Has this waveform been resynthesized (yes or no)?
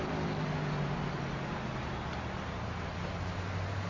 no